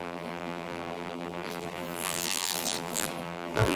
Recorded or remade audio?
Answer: remade